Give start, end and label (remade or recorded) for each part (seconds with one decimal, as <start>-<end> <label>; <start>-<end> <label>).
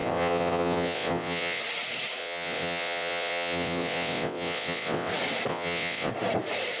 0.0-1.6 remade; 1.6-2.2 recorded; 2.2-5.1 remade; 5.1-5.5 recorded; 5.5-6.1 remade; 6.1-6.8 recorded